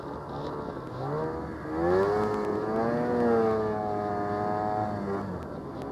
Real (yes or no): yes